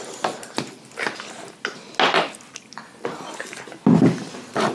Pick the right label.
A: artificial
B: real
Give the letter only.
B